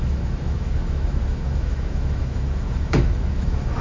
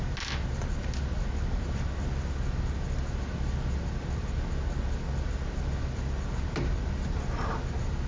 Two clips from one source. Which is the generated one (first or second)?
first